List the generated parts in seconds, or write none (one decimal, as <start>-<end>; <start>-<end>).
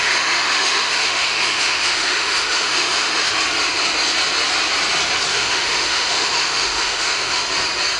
0.0-3.3; 5.3-7.4